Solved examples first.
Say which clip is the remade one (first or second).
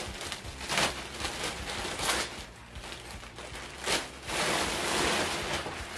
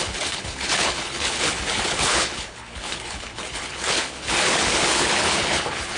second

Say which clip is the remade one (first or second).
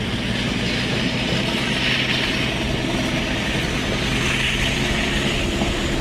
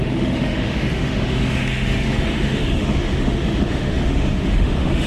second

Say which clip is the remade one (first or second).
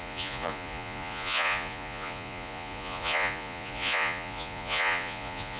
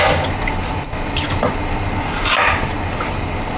first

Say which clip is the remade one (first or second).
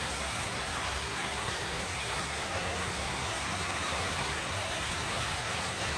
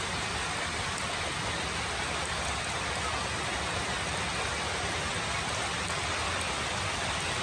first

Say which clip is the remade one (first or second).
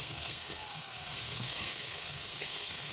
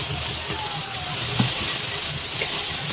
first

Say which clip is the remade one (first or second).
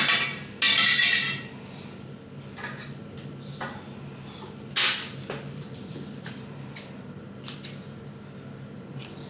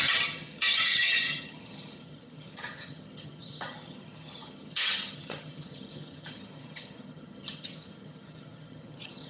second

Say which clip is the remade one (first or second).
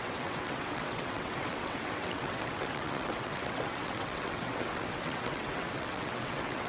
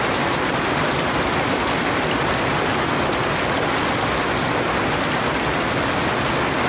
first